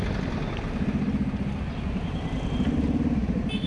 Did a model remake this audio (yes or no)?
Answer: no